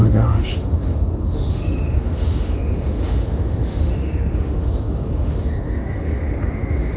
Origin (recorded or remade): remade